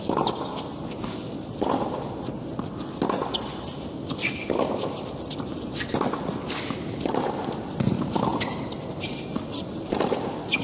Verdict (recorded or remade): recorded